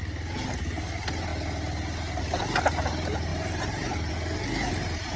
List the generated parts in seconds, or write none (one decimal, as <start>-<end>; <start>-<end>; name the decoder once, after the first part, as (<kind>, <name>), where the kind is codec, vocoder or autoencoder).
3.3-4.1 (vocoder, BigVGAN v2)